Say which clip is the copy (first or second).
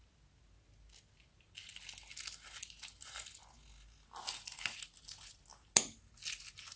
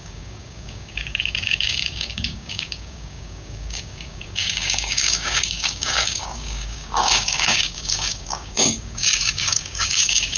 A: second